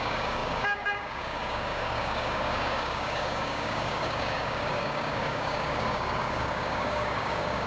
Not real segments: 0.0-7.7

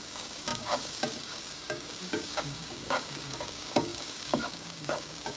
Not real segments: 0.0-5.4

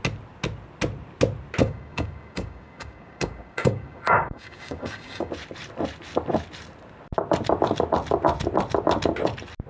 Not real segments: 1.6-5.3

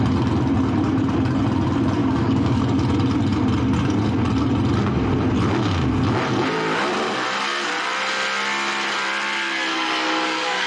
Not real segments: 2.0-2.6; 9.7-10.7

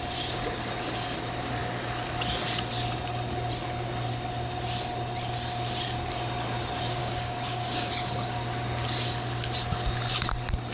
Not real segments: 7.0-7.9